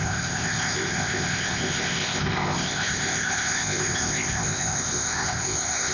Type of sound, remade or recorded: remade